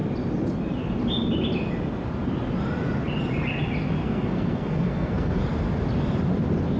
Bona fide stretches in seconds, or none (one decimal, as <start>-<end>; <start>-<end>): 0.0-4.0; 5.4-6.8